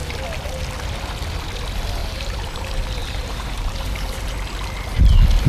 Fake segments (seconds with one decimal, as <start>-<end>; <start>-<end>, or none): 2.0-2.6; 3.0-4.2